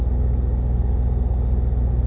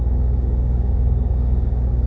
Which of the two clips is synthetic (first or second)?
second